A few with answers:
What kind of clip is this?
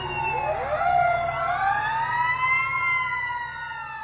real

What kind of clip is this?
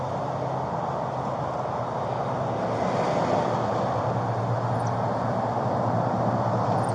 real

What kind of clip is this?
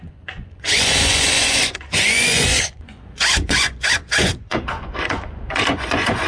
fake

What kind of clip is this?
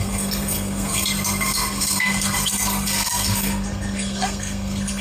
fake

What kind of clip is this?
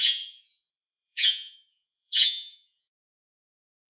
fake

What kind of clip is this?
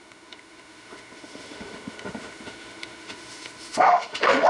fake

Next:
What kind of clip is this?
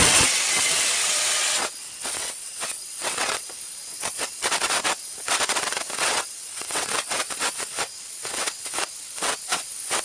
fake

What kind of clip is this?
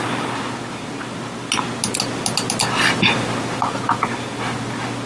real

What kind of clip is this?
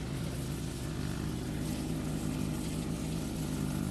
real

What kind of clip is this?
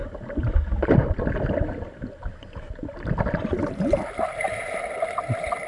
real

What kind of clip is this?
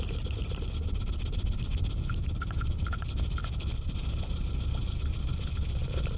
real